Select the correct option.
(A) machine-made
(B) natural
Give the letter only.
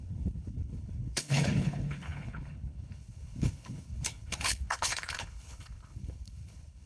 A